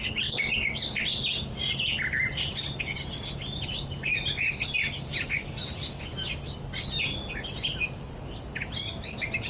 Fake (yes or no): no